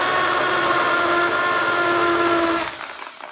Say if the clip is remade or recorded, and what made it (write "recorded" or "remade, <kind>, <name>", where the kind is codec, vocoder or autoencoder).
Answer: recorded